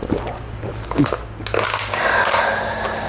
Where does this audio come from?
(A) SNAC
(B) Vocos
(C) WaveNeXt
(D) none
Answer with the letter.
D